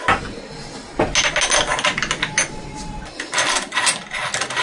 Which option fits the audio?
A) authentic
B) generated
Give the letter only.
A